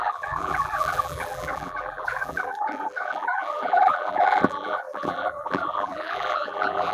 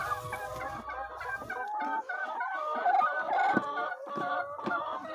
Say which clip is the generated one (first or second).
first